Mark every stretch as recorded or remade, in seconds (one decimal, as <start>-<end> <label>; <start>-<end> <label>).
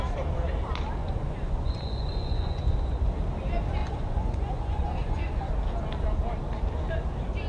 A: 0.0-1.0 recorded; 1.0-2.6 remade; 2.6-3.8 recorded; 3.8-5.5 remade; 5.5-7.5 recorded